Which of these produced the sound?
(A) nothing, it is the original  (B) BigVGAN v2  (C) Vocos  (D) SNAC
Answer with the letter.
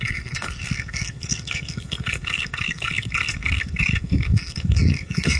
D